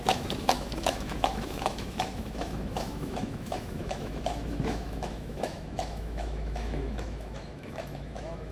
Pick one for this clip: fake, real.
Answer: fake